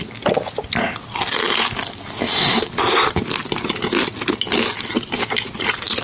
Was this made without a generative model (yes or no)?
yes